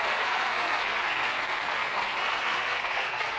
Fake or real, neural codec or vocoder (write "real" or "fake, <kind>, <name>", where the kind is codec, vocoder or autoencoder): fake, codec, SNAC